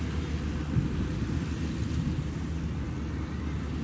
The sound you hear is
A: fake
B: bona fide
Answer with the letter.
B